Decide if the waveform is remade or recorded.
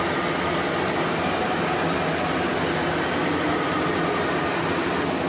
recorded